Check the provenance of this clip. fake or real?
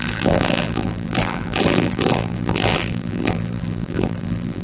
fake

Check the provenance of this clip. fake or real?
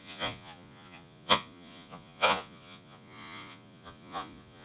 fake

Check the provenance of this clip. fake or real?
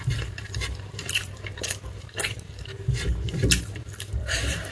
fake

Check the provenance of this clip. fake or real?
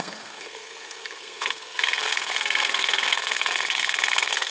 fake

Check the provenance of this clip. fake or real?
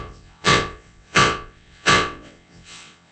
fake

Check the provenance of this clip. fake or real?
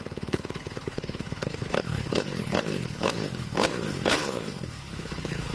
fake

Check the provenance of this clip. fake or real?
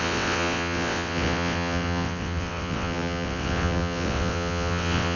fake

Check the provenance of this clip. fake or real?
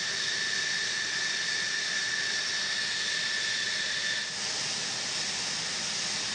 real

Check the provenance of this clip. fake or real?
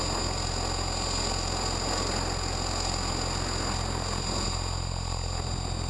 real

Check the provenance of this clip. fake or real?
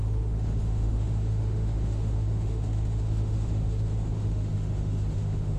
fake